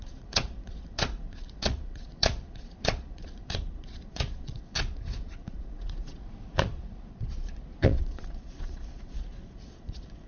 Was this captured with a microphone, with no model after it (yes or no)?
no